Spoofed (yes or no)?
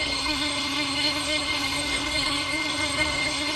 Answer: yes